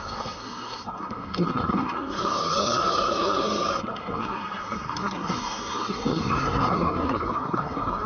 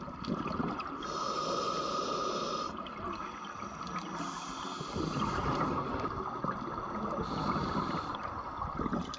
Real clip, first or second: second